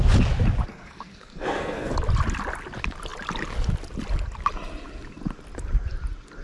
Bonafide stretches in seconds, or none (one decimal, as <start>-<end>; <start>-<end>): 0.0-0.7; 1.9-6.4